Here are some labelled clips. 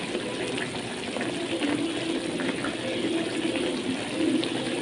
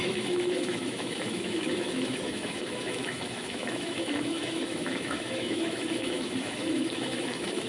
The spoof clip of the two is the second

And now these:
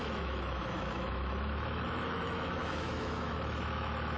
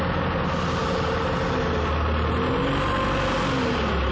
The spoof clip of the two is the first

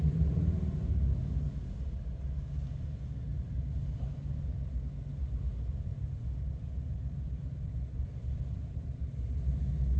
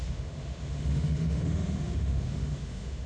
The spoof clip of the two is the second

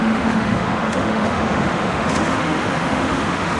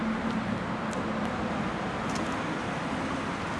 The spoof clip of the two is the first